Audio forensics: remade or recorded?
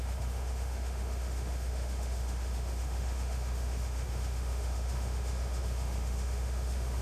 remade